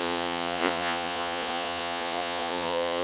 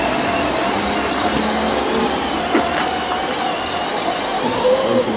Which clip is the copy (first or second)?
first